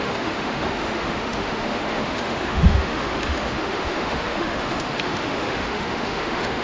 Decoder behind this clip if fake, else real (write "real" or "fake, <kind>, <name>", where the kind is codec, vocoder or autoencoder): fake, autoencoder, DAC-VAE